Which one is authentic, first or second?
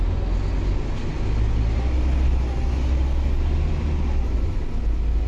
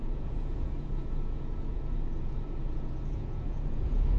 first